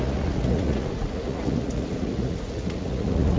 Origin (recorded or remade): remade